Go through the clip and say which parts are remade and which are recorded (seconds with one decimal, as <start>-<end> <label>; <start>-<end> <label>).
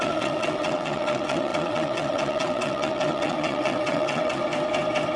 0.0-4.4 remade; 4.4-5.2 recorded